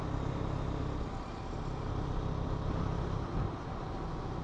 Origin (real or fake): real